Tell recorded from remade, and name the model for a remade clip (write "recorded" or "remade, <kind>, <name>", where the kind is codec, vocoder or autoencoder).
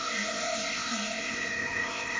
remade, codec, ZipCodec